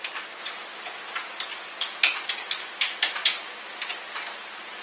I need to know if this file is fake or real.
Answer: real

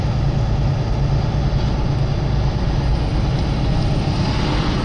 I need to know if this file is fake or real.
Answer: real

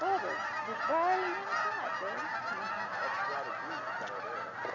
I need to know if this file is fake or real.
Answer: real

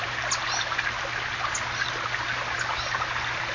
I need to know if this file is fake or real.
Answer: real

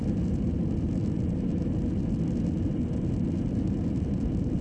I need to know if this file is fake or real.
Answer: real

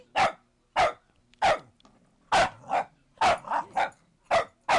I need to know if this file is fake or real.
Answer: real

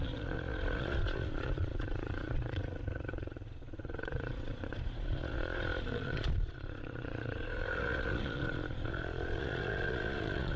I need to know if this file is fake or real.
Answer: fake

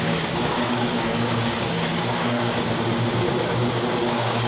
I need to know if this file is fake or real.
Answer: fake